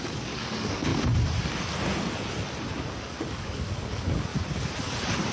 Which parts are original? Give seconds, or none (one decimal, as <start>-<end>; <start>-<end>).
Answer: 0.9-2.9; 4.3-5.3

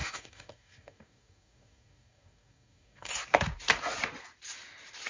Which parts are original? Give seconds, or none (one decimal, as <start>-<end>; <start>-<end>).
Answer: 3.1-5.1

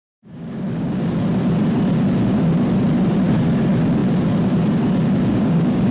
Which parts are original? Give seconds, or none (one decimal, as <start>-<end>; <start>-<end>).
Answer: 1.1-5.3

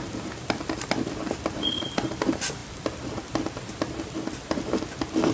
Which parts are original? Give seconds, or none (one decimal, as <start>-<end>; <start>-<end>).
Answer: 0.0-5.3

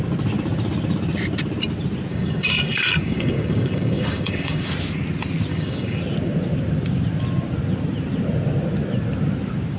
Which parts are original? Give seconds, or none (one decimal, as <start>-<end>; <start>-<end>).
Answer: 0.0-2.1; 4.7-5.5; 6.0-9.8

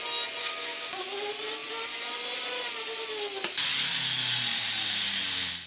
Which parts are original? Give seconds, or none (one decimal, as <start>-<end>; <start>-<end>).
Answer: 0.0-0.4; 1.0-5.7